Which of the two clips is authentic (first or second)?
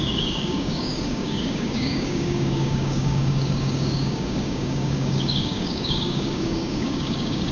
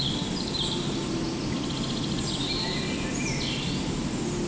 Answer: second